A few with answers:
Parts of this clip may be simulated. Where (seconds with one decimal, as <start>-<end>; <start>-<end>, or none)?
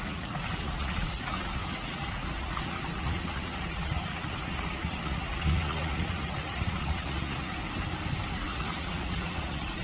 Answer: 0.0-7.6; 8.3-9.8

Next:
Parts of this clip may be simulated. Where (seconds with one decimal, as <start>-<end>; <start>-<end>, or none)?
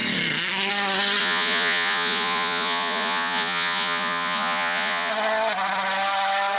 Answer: 1.2-5.1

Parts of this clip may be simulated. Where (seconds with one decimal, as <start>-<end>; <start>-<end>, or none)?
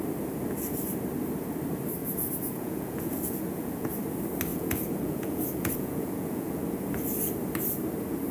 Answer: 2.0-3.9; 4.5-6.6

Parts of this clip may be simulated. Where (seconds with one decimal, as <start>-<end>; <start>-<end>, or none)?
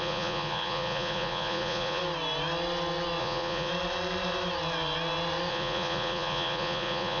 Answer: 0.0-2.0; 3.2-3.7; 5.5-7.2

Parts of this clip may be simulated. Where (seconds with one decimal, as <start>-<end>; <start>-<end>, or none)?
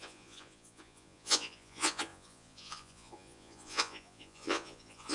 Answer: 0.0-5.1